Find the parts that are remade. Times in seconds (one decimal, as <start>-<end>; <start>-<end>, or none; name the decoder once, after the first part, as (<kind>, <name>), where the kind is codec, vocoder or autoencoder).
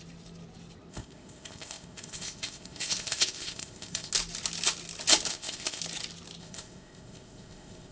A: 0.9-4.1 (codec, ZipCodec); 5.3-5.8; 6.4-7.9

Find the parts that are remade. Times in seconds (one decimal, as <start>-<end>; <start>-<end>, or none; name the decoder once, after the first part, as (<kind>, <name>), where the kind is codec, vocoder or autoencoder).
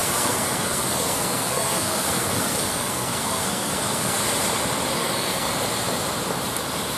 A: 0.0-4.2 (codec, SNAC); 4.9-5.5